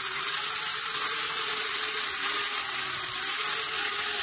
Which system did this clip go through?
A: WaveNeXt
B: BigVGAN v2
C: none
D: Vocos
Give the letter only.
C